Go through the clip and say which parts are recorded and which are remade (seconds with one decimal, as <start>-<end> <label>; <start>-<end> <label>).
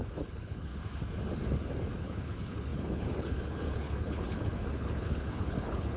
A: 0.0-0.7 remade; 0.7-2.0 recorded; 2.0-6.0 remade